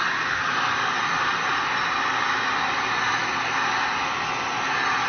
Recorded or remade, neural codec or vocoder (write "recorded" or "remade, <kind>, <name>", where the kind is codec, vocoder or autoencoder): recorded